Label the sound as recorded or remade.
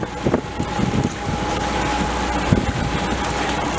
recorded